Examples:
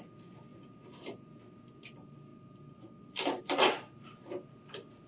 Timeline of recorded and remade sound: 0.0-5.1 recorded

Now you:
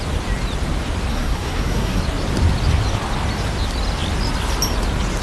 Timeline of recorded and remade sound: 0.0-1.1 recorded; 1.1-2.0 remade; 2.0-5.2 recorded

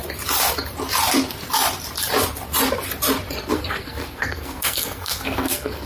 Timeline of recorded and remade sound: 0.0-3.5 recorded; 3.5-5.9 remade

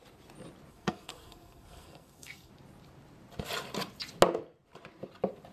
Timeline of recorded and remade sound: 0.0-0.7 recorded; 0.7-2.5 remade; 2.5-5.5 recorded

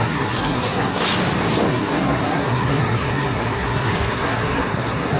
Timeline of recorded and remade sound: 0.0-1.0 remade; 1.0-1.7 recorded; 1.7-5.2 remade

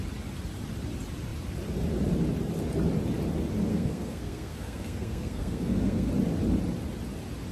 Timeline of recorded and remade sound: 0.0-3.7 recorded; 3.7-6.1 remade; 6.1-7.5 recorded